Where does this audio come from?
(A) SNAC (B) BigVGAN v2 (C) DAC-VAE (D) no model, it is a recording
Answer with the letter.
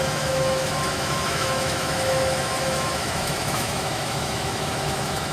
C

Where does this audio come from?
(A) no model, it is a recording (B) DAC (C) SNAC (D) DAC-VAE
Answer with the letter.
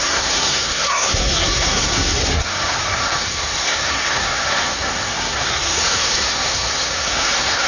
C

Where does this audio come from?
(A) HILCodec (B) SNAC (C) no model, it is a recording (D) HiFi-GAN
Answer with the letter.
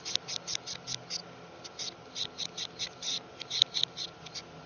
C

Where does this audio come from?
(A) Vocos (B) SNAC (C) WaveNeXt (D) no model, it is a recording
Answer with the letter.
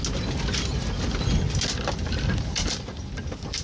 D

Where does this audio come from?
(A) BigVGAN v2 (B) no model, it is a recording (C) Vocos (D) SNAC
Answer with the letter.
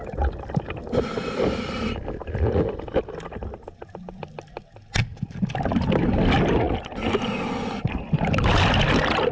B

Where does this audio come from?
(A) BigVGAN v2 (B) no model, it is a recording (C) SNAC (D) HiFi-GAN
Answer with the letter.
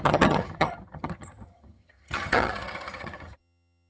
D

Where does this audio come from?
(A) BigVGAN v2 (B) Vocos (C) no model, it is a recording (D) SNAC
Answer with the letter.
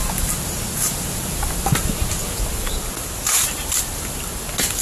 C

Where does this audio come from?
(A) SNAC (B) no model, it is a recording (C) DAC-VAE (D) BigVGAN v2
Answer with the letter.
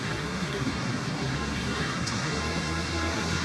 A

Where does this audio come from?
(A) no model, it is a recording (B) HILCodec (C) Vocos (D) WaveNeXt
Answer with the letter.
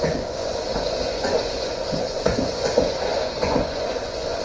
C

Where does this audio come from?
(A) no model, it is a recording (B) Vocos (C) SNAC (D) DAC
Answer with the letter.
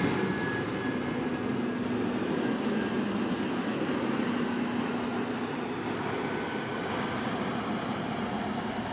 A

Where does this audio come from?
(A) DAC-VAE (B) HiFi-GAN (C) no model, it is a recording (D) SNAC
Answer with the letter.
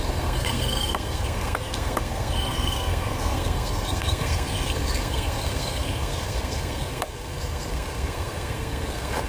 D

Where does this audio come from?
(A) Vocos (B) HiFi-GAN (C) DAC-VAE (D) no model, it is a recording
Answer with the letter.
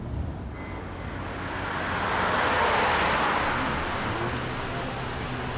D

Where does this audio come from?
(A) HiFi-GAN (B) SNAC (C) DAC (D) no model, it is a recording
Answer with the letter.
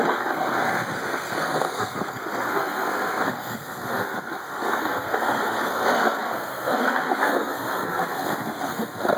B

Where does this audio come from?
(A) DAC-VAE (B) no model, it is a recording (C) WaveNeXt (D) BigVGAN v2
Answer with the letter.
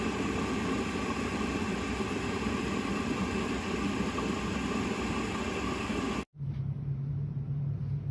B